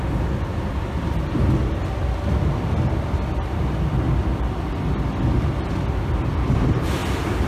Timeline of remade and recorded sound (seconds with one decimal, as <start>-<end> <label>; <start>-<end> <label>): 0.0-7.5 recorded

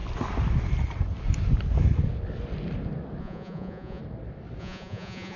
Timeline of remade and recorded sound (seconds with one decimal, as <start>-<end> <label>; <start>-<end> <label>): 0.0-3.2 recorded; 3.2-4.0 remade; 4.0-4.6 recorded; 4.6-5.4 remade

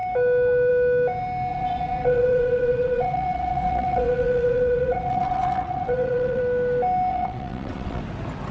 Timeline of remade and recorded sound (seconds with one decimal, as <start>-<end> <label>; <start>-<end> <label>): 0.0-1.5 recorded; 1.5-6.4 remade; 6.4-7.1 recorded; 7.1-8.0 remade; 8.0-8.5 recorded

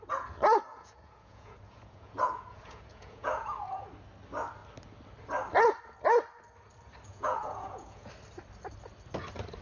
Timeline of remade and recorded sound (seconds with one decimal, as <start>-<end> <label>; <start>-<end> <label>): 0.0-0.7 recorded; 0.7-3.9 remade; 3.9-7.1 recorded; 7.1-8.1 remade; 8.1-9.6 recorded

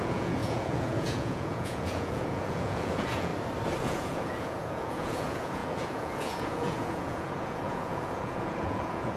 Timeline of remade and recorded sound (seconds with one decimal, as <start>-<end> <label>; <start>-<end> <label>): 0.0-3.3 remade; 3.3-3.8 recorded; 3.8-9.2 remade

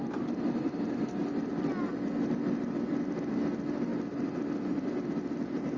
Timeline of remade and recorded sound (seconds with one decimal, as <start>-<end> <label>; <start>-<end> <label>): 0.0-5.8 recorded